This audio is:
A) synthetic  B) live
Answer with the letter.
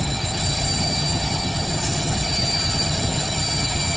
A